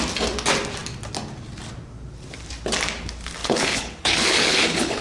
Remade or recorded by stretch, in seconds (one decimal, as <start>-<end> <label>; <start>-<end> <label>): 0.0-3.4 recorded; 3.4-5.0 remade